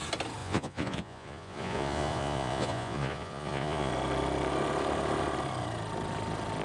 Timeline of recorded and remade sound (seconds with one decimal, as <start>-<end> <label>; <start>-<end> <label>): 0.0-0.4 recorded; 0.4-3.9 remade; 3.9-6.6 recorded